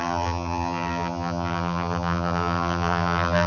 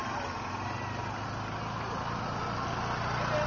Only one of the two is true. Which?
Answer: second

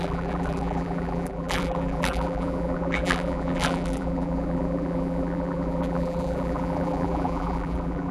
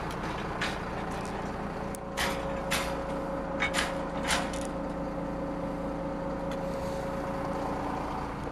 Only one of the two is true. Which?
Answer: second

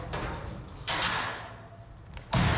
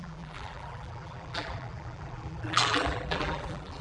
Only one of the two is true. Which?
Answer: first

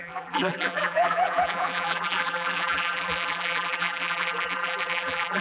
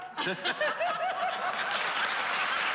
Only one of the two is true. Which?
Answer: second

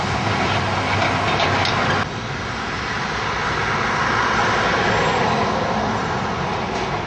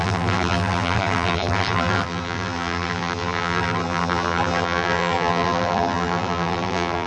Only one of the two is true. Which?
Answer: first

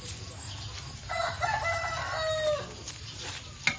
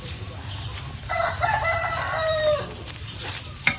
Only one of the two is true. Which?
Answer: first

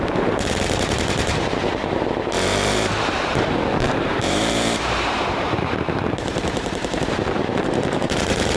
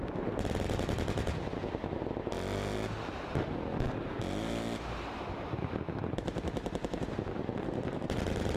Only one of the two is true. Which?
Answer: second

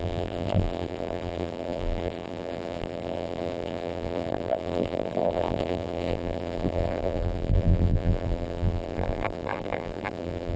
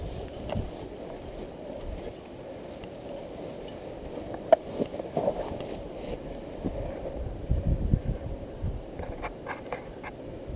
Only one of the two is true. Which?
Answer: second